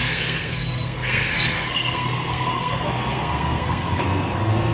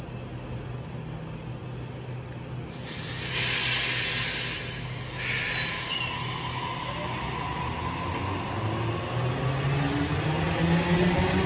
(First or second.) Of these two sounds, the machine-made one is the first